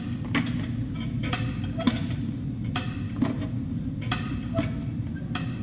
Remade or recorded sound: recorded